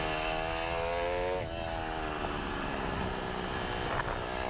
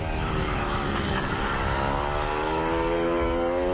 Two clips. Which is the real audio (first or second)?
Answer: first